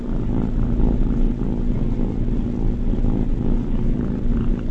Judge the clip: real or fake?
real